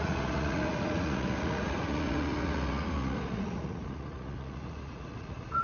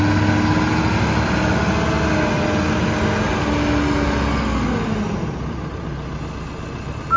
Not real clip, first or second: first